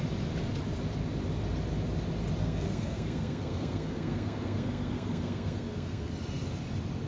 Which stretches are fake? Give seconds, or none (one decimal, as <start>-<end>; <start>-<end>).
2.4-6.1